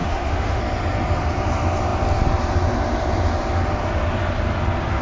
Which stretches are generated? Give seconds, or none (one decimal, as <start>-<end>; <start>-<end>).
0.0-0.6